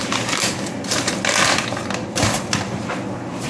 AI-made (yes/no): no